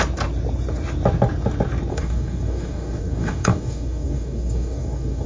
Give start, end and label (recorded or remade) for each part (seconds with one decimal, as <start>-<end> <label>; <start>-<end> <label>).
0.0-1.9 recorded; 1.9-5.3 remade